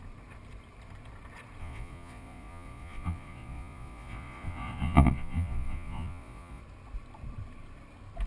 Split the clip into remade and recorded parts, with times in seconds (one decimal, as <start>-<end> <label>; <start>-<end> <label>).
0.0-1.6 recorded; 1.6-6.6 remade; 6.6-8.3 recorded